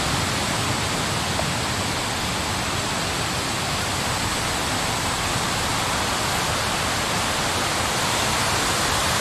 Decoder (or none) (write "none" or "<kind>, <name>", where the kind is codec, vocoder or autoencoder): none